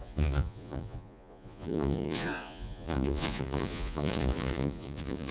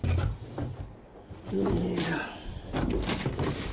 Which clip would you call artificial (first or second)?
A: first